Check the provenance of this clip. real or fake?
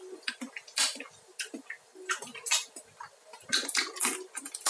real